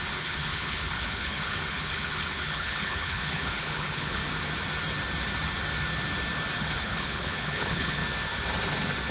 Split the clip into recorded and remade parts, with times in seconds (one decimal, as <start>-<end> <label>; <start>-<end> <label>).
0.0-4.2 remade; 4.2-6.6 recorded; 6.6-8.0 remade; 8.0-9.1 recorded